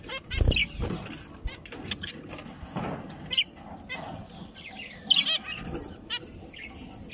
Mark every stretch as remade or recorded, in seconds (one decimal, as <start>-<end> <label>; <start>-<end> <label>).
0.0-7.1 recorded